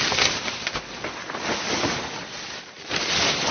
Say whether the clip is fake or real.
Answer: real